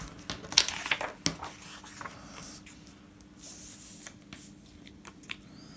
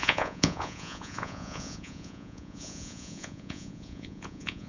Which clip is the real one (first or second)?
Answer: first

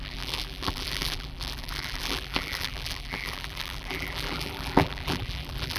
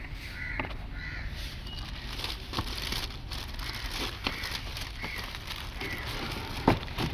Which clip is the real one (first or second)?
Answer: second